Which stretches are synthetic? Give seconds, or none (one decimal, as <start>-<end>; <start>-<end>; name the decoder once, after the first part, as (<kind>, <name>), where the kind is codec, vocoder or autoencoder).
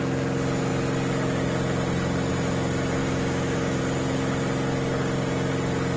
3.0-3.8 (autoencoder, DAC-VAE)